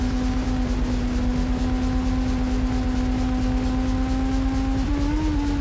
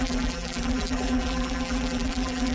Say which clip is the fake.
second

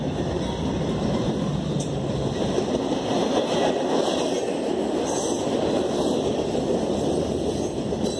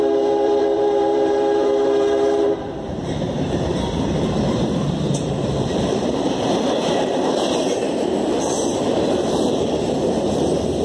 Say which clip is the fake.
second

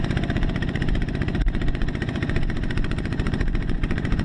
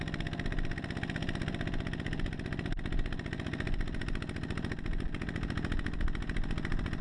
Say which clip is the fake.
first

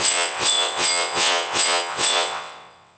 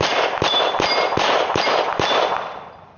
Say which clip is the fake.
first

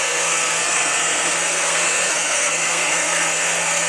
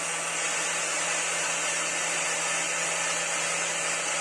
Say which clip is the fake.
first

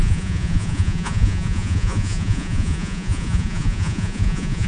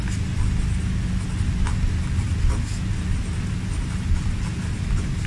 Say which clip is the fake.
first